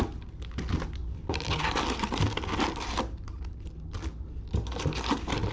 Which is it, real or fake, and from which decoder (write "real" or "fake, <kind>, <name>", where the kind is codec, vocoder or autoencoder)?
real